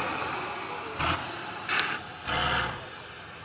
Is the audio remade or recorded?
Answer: recorded